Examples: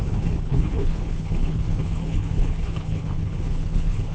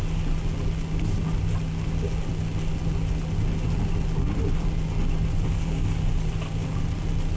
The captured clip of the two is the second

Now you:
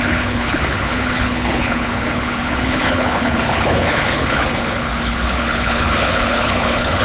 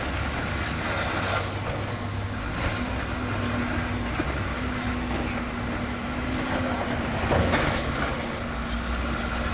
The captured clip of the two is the second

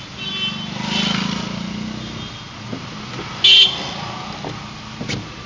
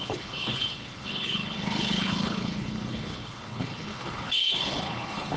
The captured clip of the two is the first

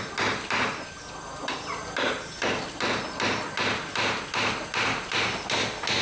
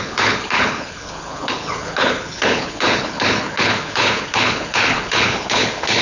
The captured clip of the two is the first